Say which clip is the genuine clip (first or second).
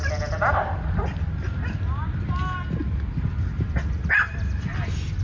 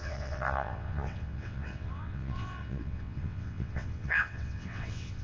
first